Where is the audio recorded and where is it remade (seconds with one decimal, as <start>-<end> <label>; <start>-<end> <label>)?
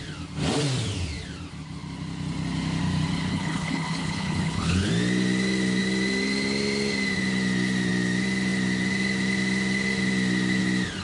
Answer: 0.0-3.3 recorded; 3.3-4.9 remade; 4.9-11.0 recorded